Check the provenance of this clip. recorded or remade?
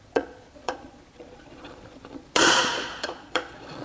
remade